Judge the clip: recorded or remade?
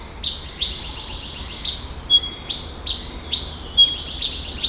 recorded